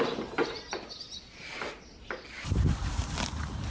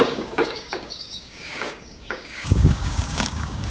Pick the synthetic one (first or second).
second